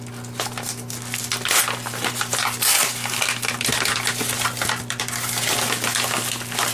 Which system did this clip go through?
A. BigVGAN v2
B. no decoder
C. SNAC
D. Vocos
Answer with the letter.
B